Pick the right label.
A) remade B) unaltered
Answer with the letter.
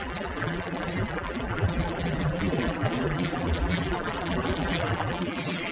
A